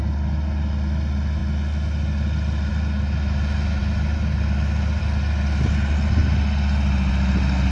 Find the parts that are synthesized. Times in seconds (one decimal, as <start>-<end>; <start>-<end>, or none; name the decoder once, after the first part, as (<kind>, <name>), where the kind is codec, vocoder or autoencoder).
none

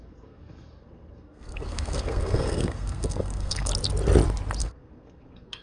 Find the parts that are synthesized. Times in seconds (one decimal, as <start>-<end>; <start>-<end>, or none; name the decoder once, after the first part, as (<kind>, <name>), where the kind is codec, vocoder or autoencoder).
0.0-3.7 (codec, SNAC); 4.6-5.6

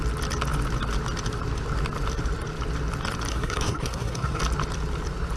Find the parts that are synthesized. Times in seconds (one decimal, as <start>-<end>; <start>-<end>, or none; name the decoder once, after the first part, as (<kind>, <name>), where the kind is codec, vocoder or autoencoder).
3.3-4.4 (codec, SNAC)

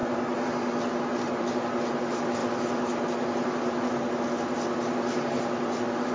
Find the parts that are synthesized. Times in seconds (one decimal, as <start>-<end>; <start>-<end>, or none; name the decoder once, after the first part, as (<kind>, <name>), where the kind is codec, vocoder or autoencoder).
none

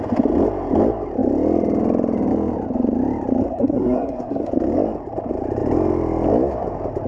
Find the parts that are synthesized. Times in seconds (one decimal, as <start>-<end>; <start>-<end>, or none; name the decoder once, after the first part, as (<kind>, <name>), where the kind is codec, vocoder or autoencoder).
3.4-4.5 (codec, SNAC)

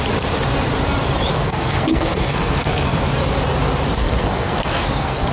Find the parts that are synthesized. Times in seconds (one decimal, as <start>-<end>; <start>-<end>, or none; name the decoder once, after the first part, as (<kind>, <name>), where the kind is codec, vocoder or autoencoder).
1.3-3.0 (codec, SNAC); 4.0-5.3

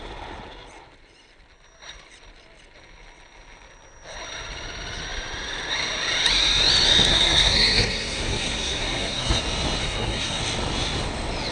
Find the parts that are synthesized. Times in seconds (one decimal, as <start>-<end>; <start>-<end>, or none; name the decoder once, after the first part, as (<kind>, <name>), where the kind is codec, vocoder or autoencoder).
7.1-9.4 (codec, SNAC); 9.8-10.4